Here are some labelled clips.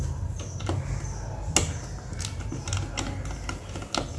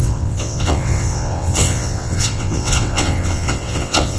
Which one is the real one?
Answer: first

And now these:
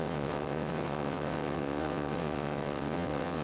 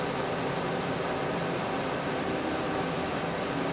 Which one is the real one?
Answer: second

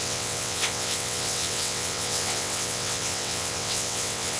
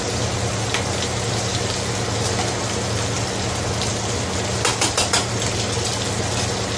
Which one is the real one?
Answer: second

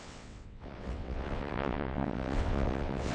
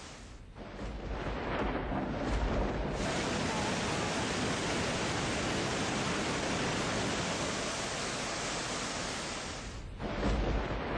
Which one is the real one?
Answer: second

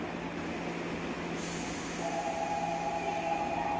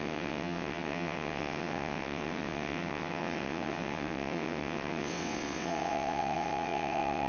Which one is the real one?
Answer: first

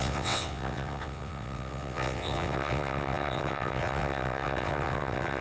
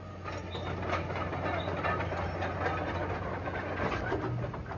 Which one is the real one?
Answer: second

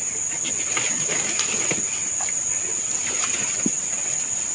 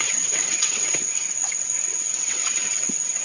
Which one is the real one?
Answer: first